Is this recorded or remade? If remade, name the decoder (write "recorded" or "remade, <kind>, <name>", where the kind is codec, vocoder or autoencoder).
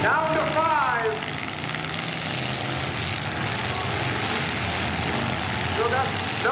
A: recorded